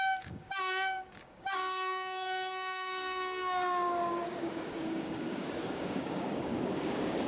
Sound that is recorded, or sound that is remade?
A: remade